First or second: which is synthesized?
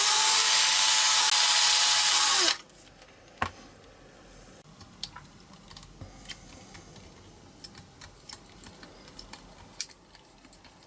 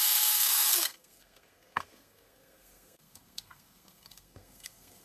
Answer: second